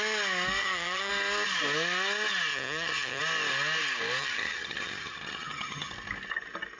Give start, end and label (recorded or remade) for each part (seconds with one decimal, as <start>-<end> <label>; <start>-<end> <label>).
0.0-0.6 recorded; 0.6-1.1 remade; 1.1-2.5 recorded; 2.5-3.2 remade; 3.2-4.2 recorded; 4.2-5.9 remade; 5.9-6.8 recorded